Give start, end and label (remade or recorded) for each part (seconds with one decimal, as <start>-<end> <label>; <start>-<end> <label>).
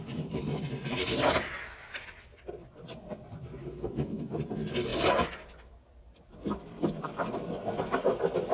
0.0-3.6 recorded; 3.6-4.3 remade; 4.3-8.5 recorded